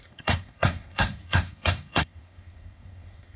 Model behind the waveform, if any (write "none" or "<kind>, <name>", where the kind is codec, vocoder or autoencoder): codec, SNAC